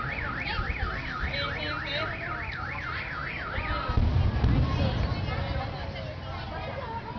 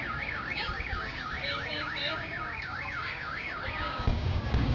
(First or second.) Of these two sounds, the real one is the first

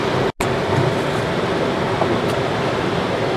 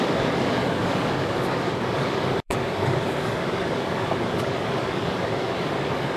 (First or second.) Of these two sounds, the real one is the first